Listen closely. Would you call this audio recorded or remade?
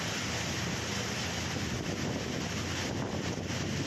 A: recorded